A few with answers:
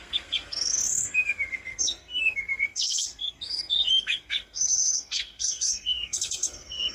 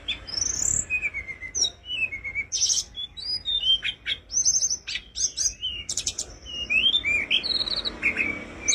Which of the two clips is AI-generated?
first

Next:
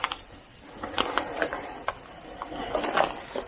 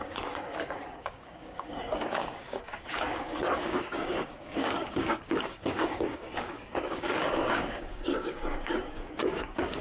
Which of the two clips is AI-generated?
second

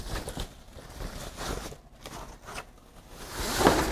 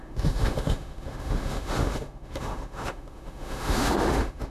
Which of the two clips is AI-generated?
second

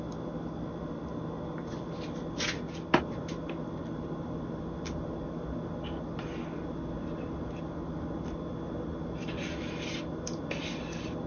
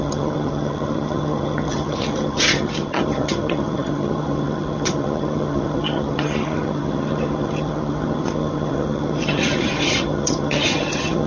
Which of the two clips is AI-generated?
second